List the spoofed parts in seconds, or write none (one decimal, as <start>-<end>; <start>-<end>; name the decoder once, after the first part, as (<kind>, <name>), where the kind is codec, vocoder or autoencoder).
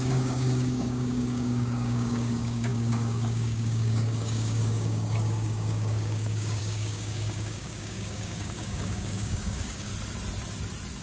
0.0-9.9 (codec, DAC)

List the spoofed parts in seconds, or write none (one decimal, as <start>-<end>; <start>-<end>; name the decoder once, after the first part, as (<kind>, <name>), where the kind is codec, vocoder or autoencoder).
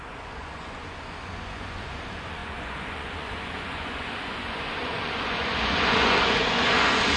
0.0-7.2 (vocoder, Vocos)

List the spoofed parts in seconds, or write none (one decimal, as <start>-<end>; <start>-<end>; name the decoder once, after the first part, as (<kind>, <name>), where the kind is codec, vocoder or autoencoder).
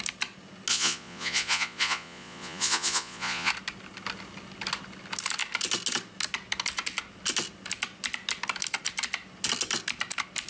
0.7-3.5 (vocoder, Vocos)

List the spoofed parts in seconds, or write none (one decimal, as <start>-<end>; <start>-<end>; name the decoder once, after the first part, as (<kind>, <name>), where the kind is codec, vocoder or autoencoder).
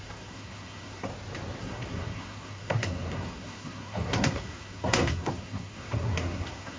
0.0-1.1 (codec, SNAC); 1.6-6.8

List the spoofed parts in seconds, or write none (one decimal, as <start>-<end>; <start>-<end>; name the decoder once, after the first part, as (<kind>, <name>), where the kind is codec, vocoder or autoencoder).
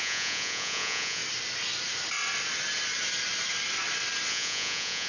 0.0-1.2 (vocoder, Vocos); 4.3-5.1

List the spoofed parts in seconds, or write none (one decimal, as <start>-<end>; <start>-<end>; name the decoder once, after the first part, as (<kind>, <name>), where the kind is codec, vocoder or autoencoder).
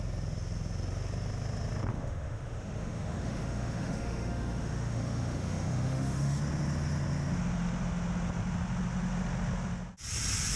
1.9-6.4 (autoencoder, DAC-VAE)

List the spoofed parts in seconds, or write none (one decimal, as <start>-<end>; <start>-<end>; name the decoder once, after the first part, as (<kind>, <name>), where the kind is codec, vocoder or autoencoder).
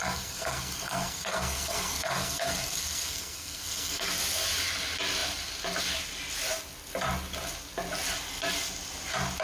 0.0-4.1 (codec, SNAC)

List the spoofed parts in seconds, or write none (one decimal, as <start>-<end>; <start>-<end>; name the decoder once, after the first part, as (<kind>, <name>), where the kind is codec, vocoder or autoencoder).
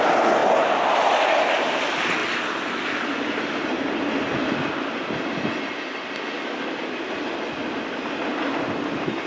none